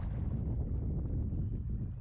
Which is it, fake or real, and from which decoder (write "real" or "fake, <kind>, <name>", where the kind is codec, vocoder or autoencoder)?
real